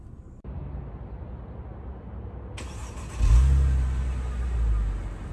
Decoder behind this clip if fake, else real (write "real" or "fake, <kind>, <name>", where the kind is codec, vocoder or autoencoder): real